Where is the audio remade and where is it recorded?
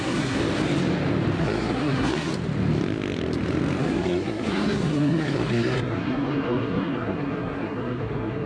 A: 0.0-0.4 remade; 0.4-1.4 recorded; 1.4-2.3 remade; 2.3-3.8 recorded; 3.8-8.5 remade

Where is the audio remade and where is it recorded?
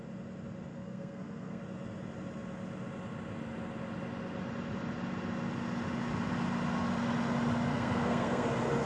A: 0.0-0.7 recorded; 0.7-1.6 remade; 1.6-7.7 recorded; 7.7-8.5 remade; 8.5-8.9 recorded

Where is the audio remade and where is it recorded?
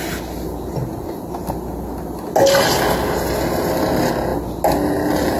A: 0.0-5.4 recorded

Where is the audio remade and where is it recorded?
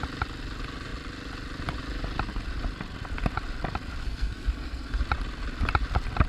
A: 0.0-4.0 recorded; 4.0-5.0 remade; 5.0-6.3 recorded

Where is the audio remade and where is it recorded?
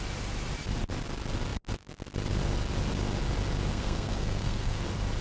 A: 0.0-3.7 recorded; 3.7-4.8 remade; 4.8-5.2 recorded